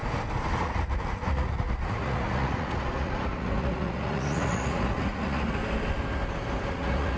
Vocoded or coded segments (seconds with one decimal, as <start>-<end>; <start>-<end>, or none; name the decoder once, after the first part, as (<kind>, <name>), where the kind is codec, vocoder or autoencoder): 0.6-5.6 (vocoder, Vocos); 6.7-7.2